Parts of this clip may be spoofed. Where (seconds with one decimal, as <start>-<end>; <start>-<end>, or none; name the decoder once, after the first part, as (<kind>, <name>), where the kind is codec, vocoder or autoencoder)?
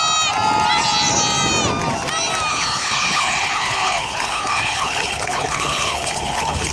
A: 2.5-6.7 (codec, HILCodec)